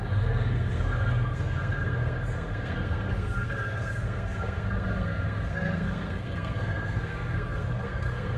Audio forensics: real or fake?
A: fake